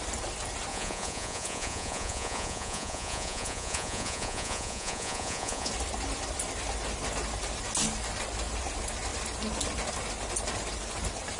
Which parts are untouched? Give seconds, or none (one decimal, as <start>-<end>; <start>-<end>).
0.0-0.7; 5.7-11.4